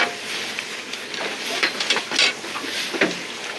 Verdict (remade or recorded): recorded